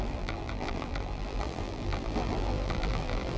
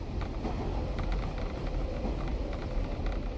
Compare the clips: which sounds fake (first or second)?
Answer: first